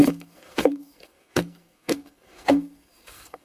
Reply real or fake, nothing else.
fake